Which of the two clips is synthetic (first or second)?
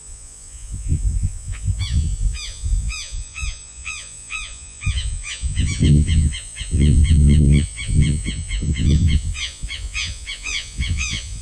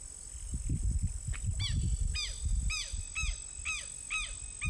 first